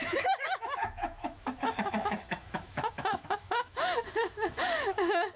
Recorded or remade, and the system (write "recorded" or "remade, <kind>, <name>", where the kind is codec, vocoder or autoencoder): remade, autoencoder, DAC-VAE